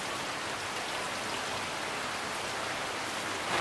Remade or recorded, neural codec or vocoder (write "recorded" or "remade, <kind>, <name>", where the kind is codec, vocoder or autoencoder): recorded